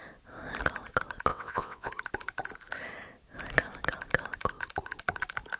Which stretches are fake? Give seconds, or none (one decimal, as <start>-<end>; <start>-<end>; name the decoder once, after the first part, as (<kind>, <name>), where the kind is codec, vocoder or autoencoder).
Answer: 1.3-1.9 (vocoder, WaveNeXt)